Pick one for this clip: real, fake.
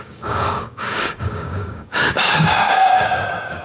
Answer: fake